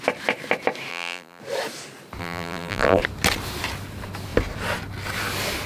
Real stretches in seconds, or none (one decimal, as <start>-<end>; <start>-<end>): 0.0-0.9; 1.4-2.2; 3.0-5.7